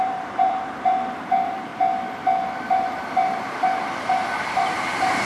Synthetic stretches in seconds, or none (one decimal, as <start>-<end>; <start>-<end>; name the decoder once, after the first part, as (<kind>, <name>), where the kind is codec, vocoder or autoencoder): 0.0-1.7 (vocoder, BigVGAN v2); 2.7-5.3